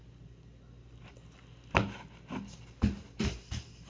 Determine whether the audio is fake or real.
real